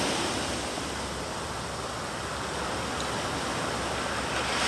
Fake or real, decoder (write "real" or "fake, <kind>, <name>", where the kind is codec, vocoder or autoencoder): real